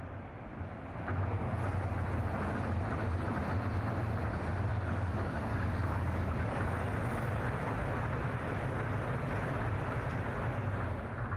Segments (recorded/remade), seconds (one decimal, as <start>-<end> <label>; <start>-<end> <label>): 0.0-4.7 recorded; 4.7-6.6 remade; 6.6-11.4 recorded